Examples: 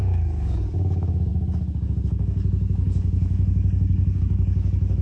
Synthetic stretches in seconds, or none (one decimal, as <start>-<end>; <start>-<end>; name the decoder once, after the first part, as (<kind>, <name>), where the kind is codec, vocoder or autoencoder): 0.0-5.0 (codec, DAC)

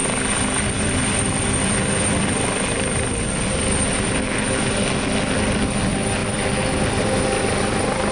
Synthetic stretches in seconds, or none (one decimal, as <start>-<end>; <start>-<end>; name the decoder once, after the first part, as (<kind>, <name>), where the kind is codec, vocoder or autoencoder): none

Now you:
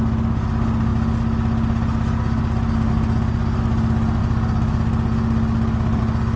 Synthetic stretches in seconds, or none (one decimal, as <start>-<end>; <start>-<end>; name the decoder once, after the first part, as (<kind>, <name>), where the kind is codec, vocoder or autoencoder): none

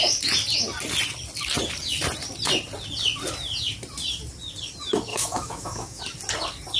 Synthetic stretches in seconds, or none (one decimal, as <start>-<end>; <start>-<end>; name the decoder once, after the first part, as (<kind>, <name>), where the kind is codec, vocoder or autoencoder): 5.1-6.0 (autoencoder, DAC-VAE)

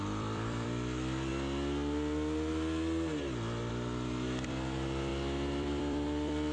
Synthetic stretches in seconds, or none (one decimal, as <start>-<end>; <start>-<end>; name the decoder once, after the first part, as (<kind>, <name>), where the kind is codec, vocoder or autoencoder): 0.0-1.3 (vocoder, BigVGAN v2); 3.7-6.5

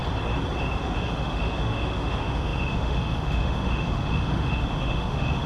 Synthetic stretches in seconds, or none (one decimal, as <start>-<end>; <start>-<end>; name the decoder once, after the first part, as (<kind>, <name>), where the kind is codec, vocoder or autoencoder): 0.6-5.5 (autoencoder, DAC-VAE)